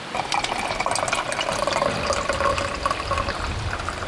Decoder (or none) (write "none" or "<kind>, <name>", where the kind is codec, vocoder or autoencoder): none